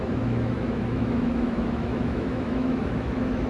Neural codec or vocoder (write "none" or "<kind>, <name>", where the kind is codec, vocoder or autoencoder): autoencoder, DAC-VAE